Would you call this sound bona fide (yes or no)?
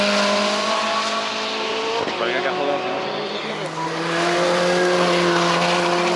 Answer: yes